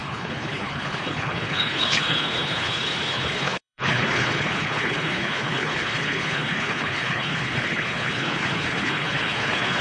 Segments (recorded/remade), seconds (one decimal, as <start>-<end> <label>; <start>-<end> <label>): 0.0-9.8 remade